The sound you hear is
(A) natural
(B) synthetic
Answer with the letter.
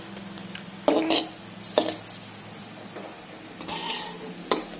A